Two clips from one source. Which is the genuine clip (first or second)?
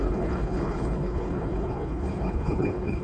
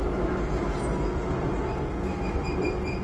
second